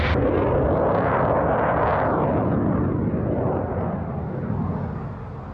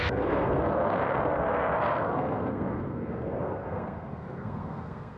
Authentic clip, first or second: first